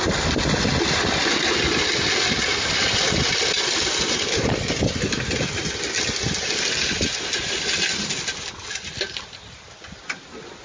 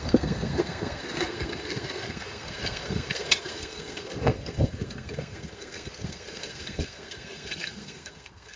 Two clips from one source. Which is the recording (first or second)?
first